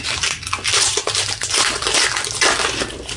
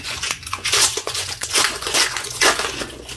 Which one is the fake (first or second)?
second